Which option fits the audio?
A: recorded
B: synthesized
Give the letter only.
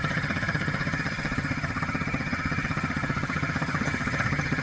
B